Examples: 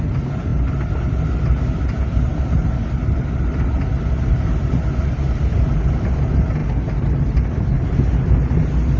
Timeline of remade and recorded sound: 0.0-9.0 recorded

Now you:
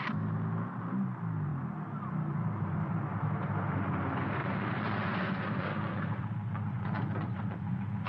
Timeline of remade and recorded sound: 0.0-4.4 recorded; 4.4-8.1 remade

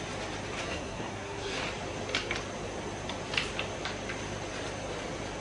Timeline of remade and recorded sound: 0.0-0.6 recorded; 0.6-1.6 remade; 1.6-5.4 recorded

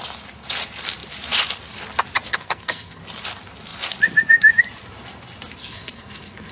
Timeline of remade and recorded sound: 0.0-2.3 recorded; 2.3-3.0 remade; 3.0-5.6 recorded; 5.6-6.5 remade

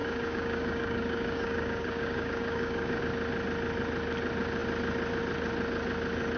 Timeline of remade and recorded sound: 0.0-3.0 remade; 3.0-6.4 recorded

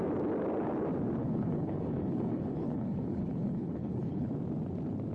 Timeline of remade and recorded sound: 0.0-1.2 recorded; 1.2-4.3 remade; 4.3-5.1 recorded

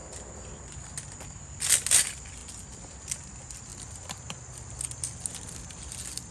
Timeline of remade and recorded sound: 0.0-6.3 recorded